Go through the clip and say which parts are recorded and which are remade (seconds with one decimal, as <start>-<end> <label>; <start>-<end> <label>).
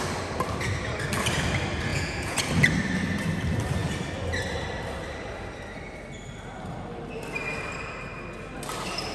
0.0-1.9 recorded; 1.9-2.5 remade; 2.5-9.1 recorded